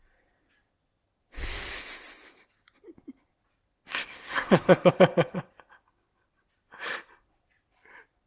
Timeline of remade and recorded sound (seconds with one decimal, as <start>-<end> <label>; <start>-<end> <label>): 0.0-3.9 recorded; 3.9-4.9 remade; 4.9-8.3 recorded